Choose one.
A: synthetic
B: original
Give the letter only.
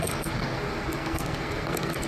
A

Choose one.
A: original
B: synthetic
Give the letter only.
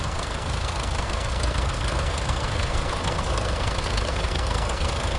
B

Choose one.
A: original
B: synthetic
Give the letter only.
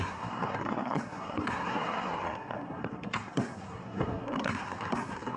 B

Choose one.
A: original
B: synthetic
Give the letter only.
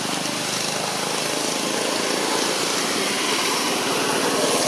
A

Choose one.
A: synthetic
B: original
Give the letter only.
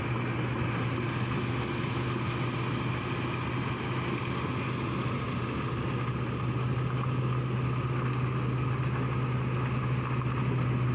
B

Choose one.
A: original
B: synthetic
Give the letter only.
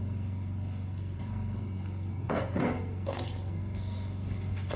B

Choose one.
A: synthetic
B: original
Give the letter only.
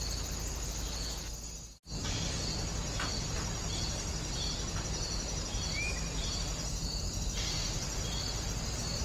B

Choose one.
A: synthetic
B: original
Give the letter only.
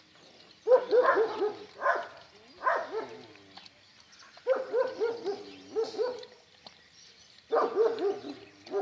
B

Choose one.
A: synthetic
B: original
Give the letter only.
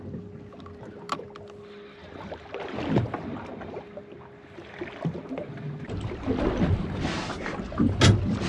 B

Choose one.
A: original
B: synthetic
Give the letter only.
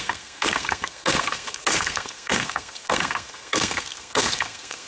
B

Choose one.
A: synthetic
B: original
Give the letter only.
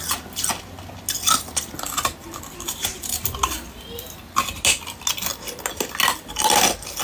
B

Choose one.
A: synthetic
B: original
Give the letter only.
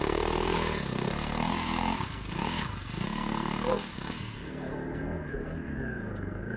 A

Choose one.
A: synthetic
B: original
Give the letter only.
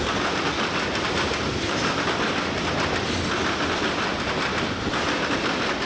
B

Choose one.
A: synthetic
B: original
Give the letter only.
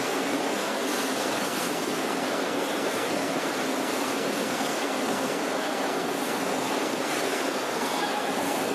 A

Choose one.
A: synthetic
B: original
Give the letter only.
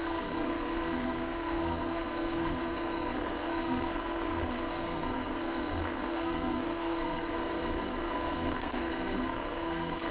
A